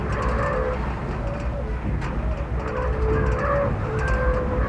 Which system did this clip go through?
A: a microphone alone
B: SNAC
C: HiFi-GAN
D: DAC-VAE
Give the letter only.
A